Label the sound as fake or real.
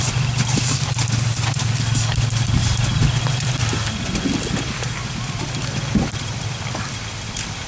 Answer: real